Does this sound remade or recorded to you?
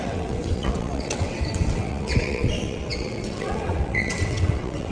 remade